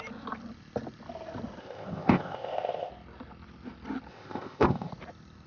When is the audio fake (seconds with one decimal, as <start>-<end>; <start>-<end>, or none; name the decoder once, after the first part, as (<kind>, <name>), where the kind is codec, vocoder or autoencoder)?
1.6-2.9 (codec, ZipCodec); 4.1-4.9